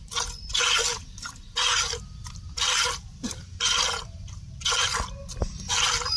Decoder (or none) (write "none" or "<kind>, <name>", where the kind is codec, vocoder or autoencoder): none